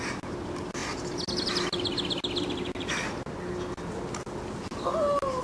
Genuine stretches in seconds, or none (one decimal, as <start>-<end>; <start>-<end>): 0.0-5.4